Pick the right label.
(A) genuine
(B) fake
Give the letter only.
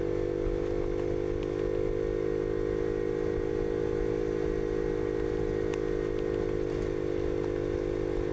A